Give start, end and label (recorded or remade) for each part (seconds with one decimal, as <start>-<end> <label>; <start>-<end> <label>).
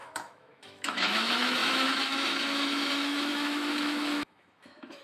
0.0-5.0 remade